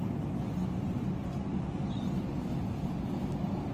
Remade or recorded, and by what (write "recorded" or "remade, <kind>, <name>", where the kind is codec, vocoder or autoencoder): recorded